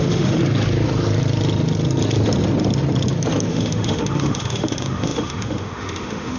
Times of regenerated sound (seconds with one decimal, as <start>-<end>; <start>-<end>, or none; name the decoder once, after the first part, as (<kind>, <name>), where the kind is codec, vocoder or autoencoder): 0.0-0.4 (autoencoder, DAC-VAE); 3.5-6.4